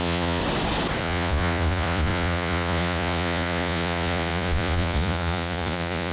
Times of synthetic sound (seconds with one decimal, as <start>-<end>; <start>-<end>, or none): 0.0-0.4; 1.0-6.1

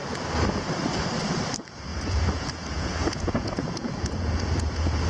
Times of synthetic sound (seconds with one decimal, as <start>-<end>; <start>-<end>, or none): 1.9-5.1

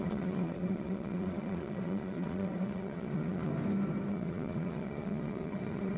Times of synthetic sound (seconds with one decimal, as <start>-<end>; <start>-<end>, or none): 0.0-3.5; 4.1-6.0

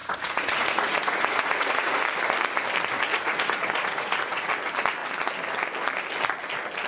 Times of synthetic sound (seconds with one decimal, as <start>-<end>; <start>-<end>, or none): 0.0-2.0; 3.1-4.5